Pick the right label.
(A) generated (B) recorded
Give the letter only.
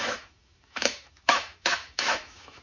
A